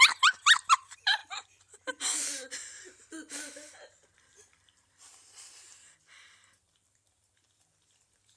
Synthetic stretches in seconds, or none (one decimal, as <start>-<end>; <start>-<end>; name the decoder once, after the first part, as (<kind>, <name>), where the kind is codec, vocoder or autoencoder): 0.0-1.2 (vocoder, BigVGAN v2); 4.4-8.4